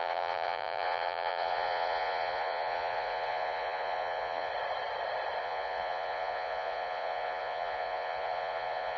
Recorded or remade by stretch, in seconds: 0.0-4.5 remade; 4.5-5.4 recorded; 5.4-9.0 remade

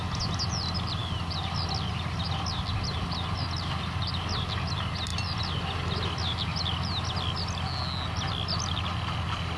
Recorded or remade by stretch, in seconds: 0.0-9.6 recorded

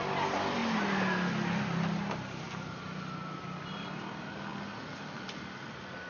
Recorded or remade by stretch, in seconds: 0.0-6.1 recorded

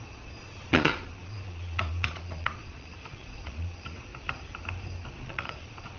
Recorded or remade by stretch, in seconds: 0.0-4.1 remade; 4.1-5.2 recorded; 5.2-6.0 remade

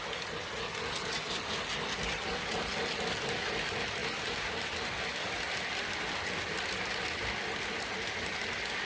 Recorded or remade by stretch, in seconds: 0.0-8.8 recorded

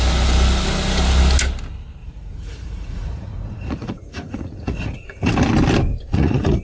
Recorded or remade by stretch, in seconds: 0.0-2.0 recorded; 2.0-5.3 remade; 5.3-5.9 recorded; 5.9-6.6 remade

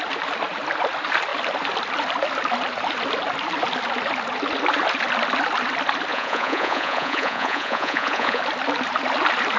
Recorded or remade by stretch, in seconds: 0.0-6.1 recorded; 6.1-8.4 remade; 8.4-9.6 recorded

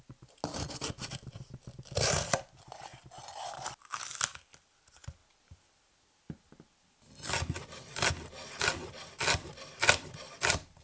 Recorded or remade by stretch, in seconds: 0.0-10.8 recorded